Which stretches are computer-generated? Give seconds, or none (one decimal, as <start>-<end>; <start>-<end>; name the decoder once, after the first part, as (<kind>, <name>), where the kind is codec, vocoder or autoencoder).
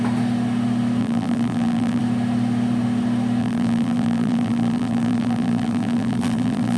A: 1.0-2.0 (vocoder, BigVGAN v2); 3.4-6.8